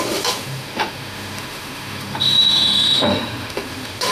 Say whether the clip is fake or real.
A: fake